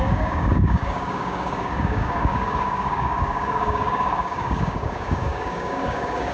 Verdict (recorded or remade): remade